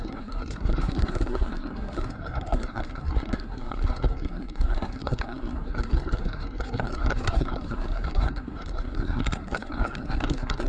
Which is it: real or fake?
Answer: fake